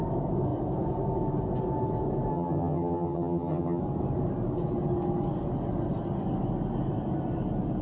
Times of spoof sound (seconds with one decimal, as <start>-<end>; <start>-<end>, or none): 2.3-3.8